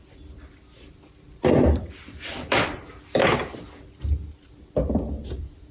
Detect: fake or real fake